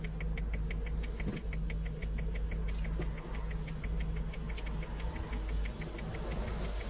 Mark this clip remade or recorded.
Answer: recorded